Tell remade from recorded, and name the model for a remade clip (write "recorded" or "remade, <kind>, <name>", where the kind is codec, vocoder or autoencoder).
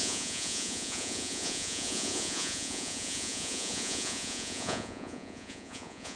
remade, vocoder, Vocos